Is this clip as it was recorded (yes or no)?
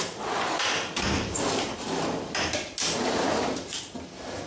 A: yes